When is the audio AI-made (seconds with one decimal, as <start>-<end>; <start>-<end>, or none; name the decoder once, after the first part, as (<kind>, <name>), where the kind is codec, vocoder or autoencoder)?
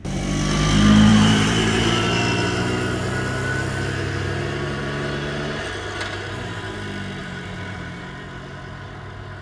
1.1-2.0 (vocoder, BigVGAN v2); 7.2-8.0